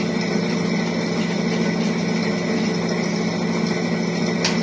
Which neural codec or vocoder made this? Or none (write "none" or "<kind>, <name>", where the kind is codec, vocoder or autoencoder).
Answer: none